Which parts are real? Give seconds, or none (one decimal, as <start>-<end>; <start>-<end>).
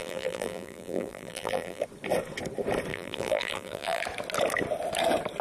1.8-2.9; 4.0-5.4